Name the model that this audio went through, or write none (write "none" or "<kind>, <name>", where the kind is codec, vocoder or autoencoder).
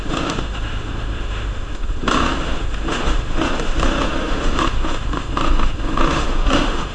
autoencoder, DAC-VAE